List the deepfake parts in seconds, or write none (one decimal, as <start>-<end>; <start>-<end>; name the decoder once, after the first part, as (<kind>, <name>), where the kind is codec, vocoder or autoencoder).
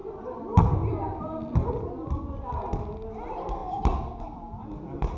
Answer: none